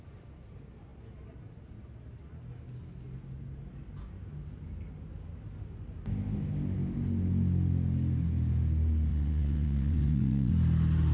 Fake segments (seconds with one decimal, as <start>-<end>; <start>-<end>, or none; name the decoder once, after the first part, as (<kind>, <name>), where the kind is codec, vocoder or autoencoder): 9.1-10.5 (vocoder, WaveNeXt)